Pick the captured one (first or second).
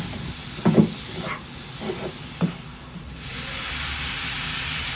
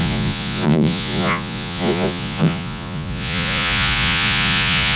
first